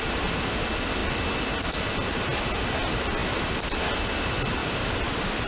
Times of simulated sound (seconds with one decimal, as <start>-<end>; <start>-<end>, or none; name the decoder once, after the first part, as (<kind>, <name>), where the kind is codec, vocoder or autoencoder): 4.6-5.5 (vocoder, BigVGAN v2)